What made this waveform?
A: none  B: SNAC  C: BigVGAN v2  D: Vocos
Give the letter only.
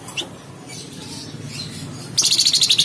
A